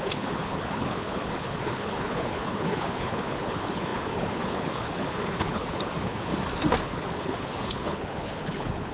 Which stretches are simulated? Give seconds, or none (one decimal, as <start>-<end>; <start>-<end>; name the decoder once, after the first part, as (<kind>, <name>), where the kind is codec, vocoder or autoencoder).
0.0-6.3 (codec, HILCodec); 6.8-8.9